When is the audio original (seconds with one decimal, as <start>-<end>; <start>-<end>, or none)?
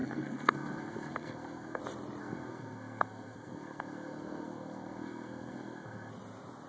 1.8-2.2; 6.1-6.7